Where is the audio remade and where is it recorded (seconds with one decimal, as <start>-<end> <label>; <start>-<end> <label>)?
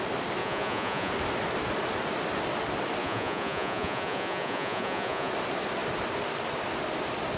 0.0-0.4 recorded; 0.4-1.1 remade; 1.1-3.0 recorded; 3.0-5.3 remade; 5.3-7.4 recorded